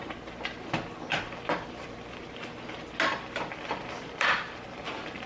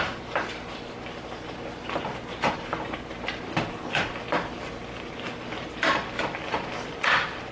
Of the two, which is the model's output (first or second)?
second